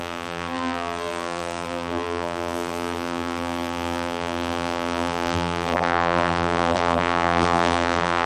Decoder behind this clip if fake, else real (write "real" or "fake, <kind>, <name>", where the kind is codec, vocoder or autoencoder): fake, vocoder, BigVGAN v2